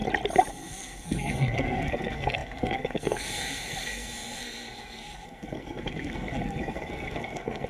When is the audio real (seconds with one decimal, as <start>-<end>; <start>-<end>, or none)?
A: 0.0-0.5